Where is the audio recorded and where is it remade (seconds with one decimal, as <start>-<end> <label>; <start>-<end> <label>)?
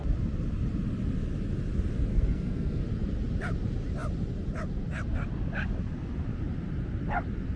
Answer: 0.0-2.1 recorded; 2.1-2.8 remade; 2.8-7.6 recorded